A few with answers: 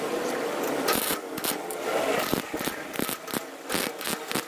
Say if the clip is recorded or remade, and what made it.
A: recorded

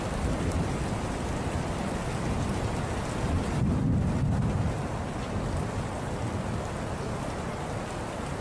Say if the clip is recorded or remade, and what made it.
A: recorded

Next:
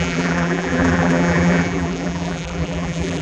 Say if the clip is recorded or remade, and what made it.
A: remade, vocoder, BigVGAN v2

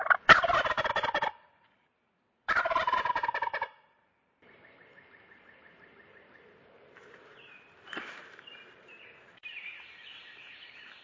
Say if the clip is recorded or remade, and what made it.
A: remade, vocoder, BigVGAN v2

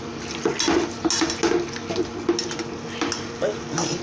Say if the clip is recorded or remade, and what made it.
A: recorded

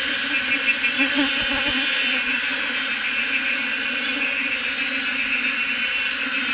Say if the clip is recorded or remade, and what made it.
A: recorded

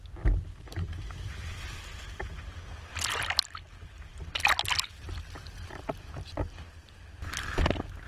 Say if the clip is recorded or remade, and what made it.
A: recorded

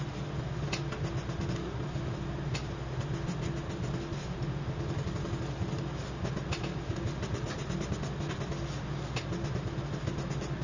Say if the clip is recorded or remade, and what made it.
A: recorded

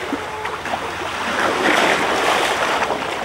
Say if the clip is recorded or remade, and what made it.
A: recorded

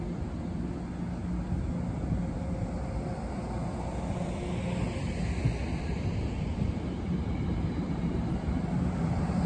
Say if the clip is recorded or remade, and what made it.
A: recorded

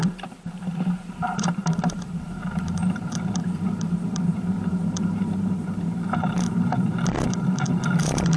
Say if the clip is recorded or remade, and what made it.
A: remade, vocoder, BigVGAN v2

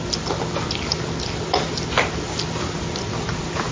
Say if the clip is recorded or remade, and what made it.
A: recorded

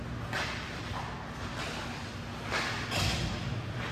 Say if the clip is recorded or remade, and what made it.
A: recorded